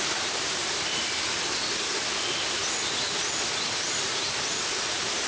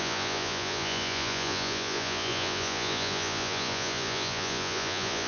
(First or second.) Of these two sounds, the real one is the first